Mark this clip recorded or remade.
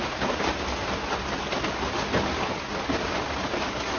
recorded